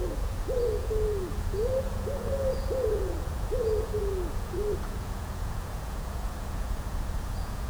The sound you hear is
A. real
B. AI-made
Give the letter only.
B